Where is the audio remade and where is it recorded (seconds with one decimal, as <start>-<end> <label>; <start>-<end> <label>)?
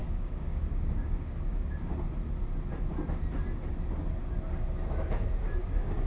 0.0-1.9 remade; 1.9-5.6 recorded; 5.6-6.1 remade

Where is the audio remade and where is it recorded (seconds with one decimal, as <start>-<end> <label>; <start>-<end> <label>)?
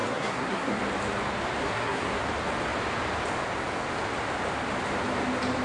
0.0-0.8 remade; 0.8-1.6 recorded; 1.6-2.2 remade; 2.2-5.6 recorded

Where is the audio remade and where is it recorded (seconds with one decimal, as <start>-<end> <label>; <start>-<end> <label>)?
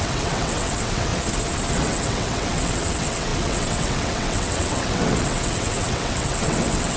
0.0-1.1 remade; 1.1-1.7 recorded; 1.7-7.0 remade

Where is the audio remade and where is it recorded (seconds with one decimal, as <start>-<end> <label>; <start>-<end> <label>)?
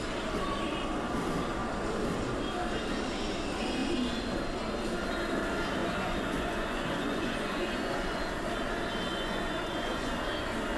0.0-5.8 recorded; 5.8-8.2 remade; 8.2-9.1 recorded; 9.1-10.1 remade; 10.1-10.8 recorded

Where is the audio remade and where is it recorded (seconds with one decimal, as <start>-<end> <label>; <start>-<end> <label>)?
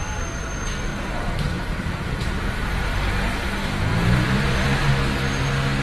0.0-0.9 recorded; 0.9-2.3 remade; 2.3-3.9 recorded; 3.9-4.9 remade; 4.9-5.8 recorded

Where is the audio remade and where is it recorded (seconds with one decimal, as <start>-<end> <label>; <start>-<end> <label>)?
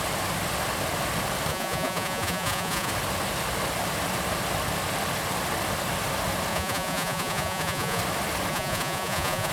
0.0-1.5 recorded; 1.5-2.9 remade; 2.9-6.5 recorded; 6.5-8.0 remade; 8.0-8.5 recorded; 8.5-9.5 remade